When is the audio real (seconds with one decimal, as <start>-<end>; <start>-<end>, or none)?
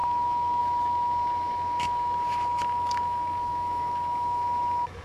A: none